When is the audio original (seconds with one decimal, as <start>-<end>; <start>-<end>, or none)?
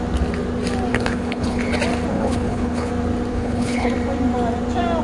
0.0-0.9; 1.7-2.1; 2.9-3.3; 3.9-5.0